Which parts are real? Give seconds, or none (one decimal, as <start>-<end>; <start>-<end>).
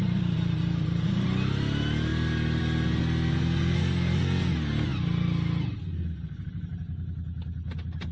0.0-8.1